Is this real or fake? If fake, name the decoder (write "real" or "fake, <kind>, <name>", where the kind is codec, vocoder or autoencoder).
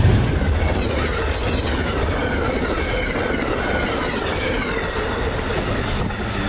real